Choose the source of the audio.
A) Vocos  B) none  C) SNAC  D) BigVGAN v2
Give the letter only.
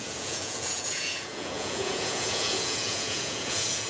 A